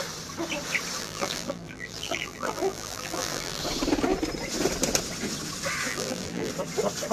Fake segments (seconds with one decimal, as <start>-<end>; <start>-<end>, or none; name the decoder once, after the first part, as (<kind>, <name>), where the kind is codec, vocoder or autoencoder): 1.0-3.6 (vocoder, BigVGAN v2); 5.9-6.5